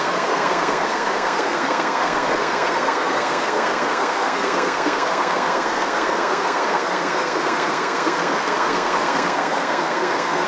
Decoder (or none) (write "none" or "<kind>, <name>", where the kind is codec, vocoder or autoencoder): codec, SNAC